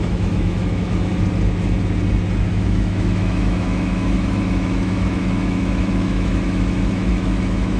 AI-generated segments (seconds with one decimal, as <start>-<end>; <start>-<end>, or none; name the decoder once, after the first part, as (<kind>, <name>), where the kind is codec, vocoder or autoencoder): 0.0-1.1 (autoencoder, DAC-VAE); 2.5-7.8